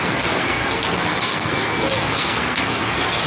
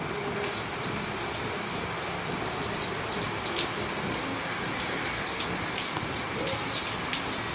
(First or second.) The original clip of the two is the second